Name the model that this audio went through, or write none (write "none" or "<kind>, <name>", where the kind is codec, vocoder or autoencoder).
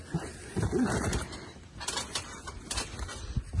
none